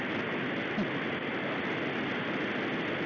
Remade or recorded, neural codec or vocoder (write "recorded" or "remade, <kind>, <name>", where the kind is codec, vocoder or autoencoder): recorded